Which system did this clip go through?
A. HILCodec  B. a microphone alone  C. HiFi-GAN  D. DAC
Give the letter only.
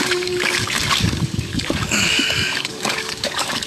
D